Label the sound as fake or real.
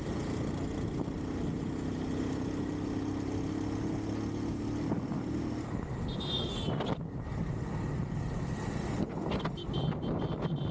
real